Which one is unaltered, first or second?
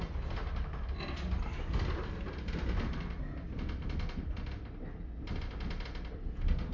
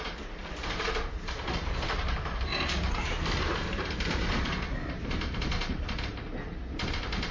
first